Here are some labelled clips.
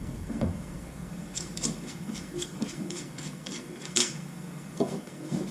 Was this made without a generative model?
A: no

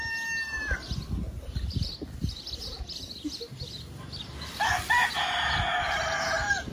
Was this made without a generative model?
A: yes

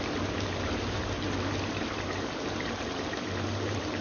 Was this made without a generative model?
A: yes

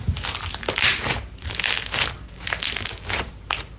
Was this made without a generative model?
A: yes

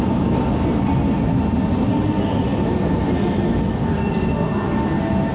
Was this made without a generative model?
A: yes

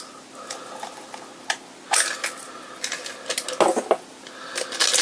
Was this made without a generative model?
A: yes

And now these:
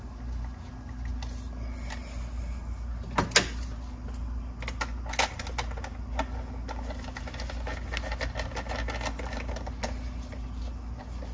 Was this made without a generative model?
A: yes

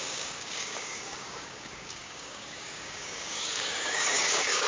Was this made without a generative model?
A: no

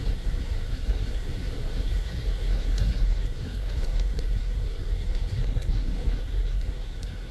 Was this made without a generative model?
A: no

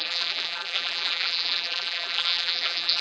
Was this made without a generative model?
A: no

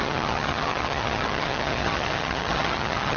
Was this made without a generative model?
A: no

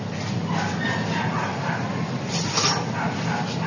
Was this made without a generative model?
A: yes